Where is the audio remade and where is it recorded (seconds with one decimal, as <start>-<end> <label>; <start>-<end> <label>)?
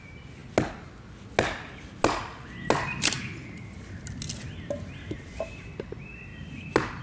0.0-7.0 recorded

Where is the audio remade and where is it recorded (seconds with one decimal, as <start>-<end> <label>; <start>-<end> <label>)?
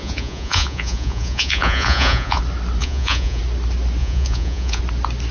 0.0-2.4 remade; 2.4-2.8 recorded; 2.8-3.4 remade; 3.4-4.0 recorded; 4.0-4.8 remade; 4.8-5.3 recorded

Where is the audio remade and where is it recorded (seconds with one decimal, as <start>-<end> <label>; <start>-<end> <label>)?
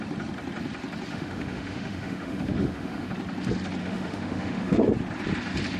0.0-1.1 recorded; 1.1-3.1 remade; 3.1-3.8 recorded; 3.8-4.8 remade; 4.8-5.8 recorded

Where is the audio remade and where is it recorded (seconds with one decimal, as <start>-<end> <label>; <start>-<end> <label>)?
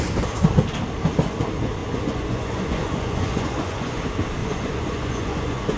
0.0-1.8 recorded; 1.8-4.0 remade; 4.0-4.4 recorded; 4.4-5.8 remade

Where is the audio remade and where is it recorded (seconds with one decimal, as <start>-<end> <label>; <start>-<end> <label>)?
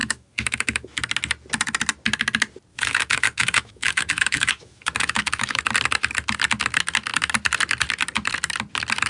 0.0-1.0 remade; 1.0-2.7 recorded; 2.7-5.6 remade; 5.6-9.1 recorded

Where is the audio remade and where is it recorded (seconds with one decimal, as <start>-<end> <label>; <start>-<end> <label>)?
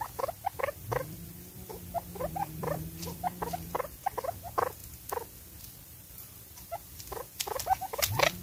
0.0-4.8 remade; 4.8-5.6 recorded; 5.6-8.4 remade